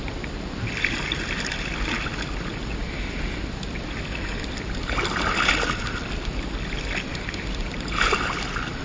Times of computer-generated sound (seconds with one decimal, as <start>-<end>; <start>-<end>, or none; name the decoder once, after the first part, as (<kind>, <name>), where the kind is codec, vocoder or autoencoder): 7.1-8.4 (vocoder, BigVGAN v2)